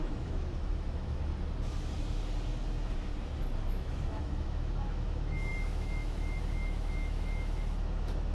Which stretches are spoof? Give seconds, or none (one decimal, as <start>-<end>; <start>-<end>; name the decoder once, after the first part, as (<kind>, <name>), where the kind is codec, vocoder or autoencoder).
0.0-1.3 (autoencoder, DAC-VAE); 3.7-8.3